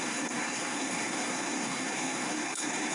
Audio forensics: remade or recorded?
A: remade